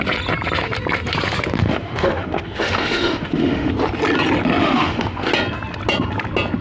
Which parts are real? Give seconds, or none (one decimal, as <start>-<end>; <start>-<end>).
0.0-1.6; 3.7-4.6; 5.3-6.6